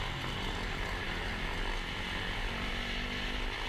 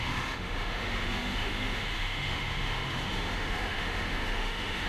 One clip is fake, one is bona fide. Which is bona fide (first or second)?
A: first